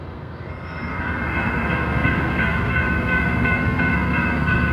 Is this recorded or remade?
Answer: remade